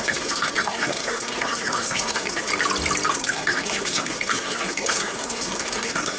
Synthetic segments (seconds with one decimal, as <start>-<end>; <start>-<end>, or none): 0.0-2.5; 3.1-6.2